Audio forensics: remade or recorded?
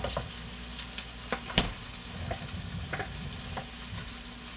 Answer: recorded